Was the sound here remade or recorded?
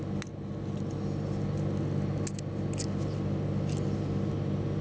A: recorded